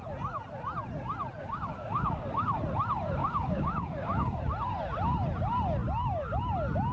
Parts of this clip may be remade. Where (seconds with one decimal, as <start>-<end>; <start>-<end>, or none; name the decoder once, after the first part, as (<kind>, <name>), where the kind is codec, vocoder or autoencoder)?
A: 1.4-2.6 (codec, DAC); 3.2-4.4